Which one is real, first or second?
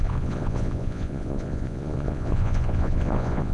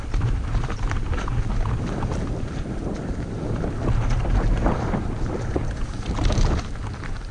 second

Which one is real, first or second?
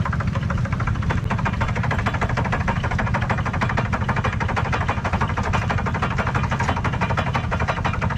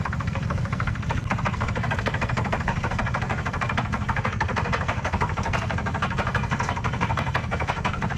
first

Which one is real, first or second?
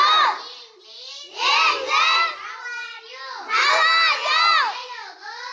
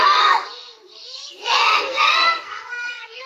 first